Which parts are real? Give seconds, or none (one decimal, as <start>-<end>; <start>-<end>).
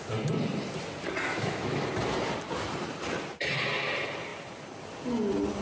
0.0-1.3; 1.9-5.6